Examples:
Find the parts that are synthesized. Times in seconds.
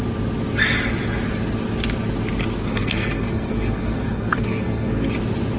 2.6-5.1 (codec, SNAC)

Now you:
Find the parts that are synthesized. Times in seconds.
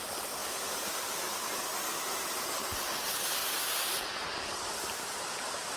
none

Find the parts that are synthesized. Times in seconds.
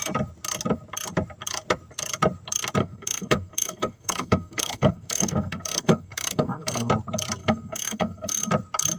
2.8-6.9 (codec, SNAC); 7.4-8.5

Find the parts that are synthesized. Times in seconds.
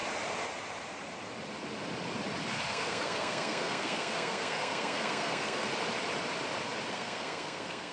2.7-5.7 (codec, SNAC); 6.9-7.9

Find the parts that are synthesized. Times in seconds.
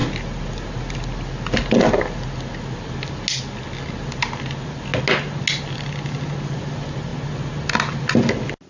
none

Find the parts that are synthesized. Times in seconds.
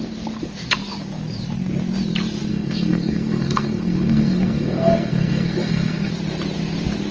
2.5-6.1 (codec, SNAC)